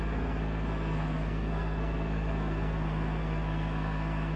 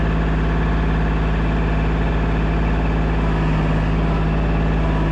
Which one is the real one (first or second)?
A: second